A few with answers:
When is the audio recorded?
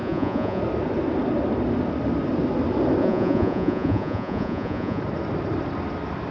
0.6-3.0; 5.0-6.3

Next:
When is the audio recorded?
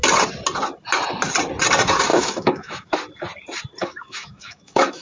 0.0-2.1; 2.9-3.8